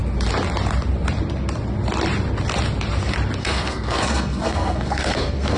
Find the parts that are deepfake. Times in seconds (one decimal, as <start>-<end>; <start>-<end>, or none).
3.4-5.6